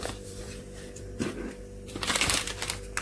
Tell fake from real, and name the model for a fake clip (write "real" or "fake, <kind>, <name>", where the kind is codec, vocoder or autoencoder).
fake, vocoder, BigVGAN v2